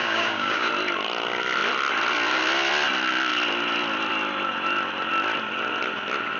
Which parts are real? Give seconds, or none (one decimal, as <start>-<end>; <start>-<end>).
0.7-6.4